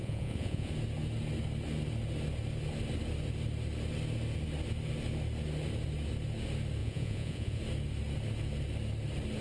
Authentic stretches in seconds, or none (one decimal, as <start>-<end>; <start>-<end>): 0.7-6.8; 7.6-9.4